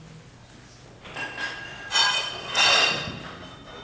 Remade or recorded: recorded